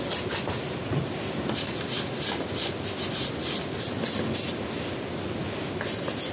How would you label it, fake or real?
real